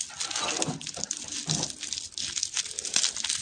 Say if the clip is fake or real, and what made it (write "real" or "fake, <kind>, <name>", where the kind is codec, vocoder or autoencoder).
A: real